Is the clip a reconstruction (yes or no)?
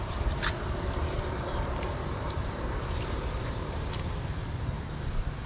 yes